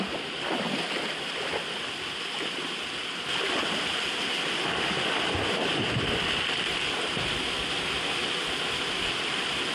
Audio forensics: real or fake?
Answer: real